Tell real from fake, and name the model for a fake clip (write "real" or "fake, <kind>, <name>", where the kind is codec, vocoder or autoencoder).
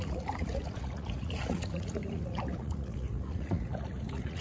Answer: fake, vocoder, Vocos